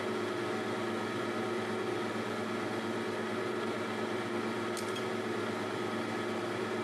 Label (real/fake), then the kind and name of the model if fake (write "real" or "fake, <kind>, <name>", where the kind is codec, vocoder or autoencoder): real